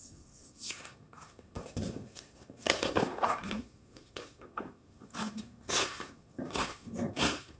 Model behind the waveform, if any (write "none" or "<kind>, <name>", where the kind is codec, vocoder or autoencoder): codec, SNAC